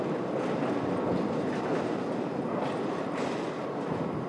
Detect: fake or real real